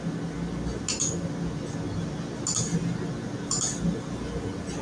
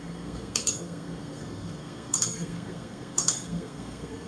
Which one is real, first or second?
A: first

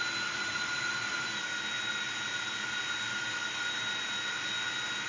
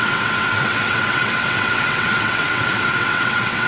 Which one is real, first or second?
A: first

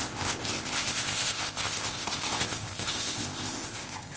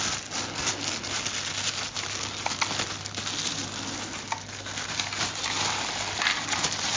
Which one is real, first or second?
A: second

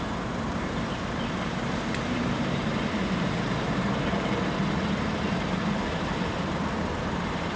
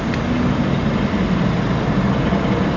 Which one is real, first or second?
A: second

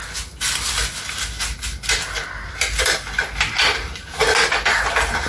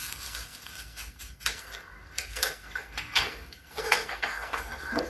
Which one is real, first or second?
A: first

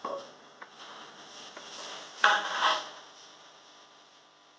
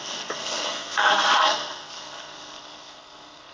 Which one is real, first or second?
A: first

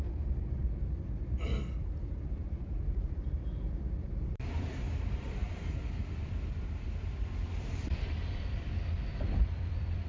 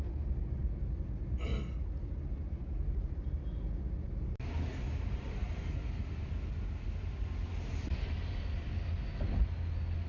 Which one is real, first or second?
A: second